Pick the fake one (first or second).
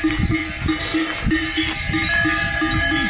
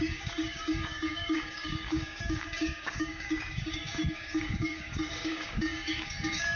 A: second